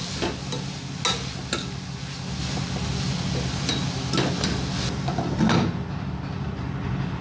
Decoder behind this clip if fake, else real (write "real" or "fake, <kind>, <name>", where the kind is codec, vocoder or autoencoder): real